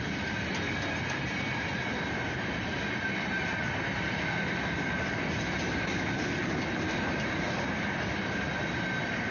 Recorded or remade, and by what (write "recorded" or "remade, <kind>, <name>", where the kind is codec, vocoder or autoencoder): recorded